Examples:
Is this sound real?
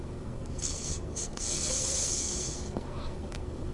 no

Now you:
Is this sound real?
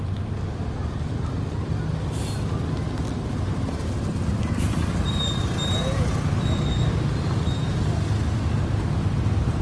yes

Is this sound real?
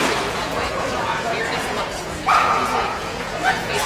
no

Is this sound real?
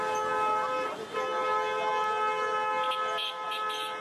yes